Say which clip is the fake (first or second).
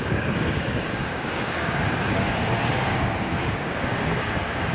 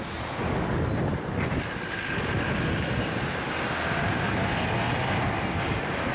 first